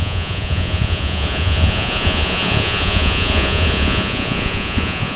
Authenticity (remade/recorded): remade